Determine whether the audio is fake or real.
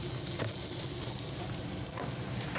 real